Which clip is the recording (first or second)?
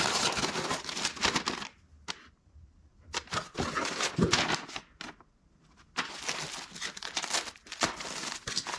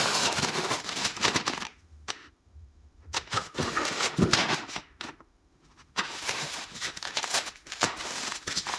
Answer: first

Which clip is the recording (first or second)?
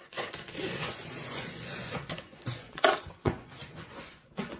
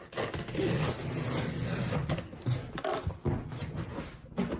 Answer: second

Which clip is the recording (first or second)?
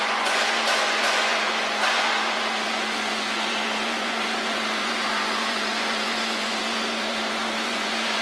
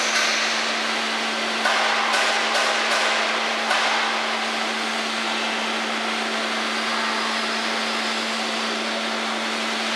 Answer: second